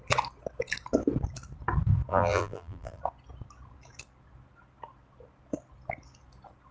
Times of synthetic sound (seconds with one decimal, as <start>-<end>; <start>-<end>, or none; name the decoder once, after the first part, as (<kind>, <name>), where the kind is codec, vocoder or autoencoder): 2.1-3.0 (vocoder, BigVGAN v2)